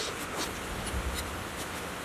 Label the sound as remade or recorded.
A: recorded